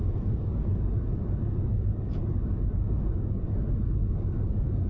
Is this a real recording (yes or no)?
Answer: no